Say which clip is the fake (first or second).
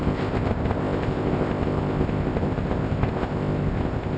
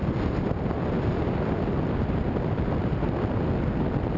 first